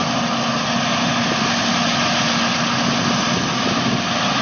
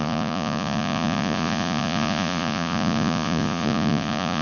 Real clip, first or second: first